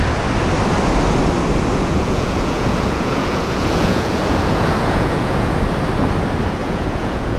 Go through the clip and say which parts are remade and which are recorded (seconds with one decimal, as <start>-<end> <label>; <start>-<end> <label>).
0.0-1.7 recorded; 1.7-5.5 remade; 5.5-6.6 recorded; 6.6-7.4 remade